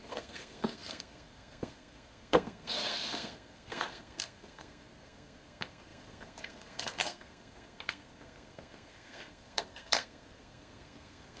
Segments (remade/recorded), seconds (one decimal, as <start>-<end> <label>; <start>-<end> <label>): 0.0-11.4 remade

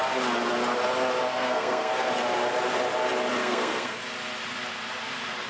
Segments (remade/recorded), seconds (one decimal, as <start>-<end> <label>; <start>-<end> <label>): 0.0-1.3 recorded; 1.3-1.9 remade; 1.9-3.4 recorded; 3.4-4.0 remade; 4.0-5.5 recorded

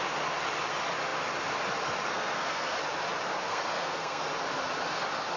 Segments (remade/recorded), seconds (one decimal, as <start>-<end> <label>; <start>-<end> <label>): 0.0-2.1 recorded; 2.1-2.8 remade; 2.8-3.5 recorded; 3.5-4.3 remade; 4.3-5.4 recorded

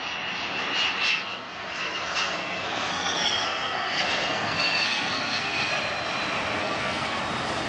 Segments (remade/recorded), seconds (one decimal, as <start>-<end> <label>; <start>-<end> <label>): 0.0-1.1 recorded; 1.1-5.7 remade; 5.7-6.6 recorded; 6.6-7.2 remade; 7.2-7.7 recorded